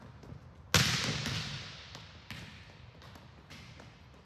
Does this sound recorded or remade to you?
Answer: recorded